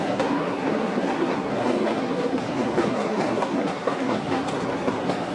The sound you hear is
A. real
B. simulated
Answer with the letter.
B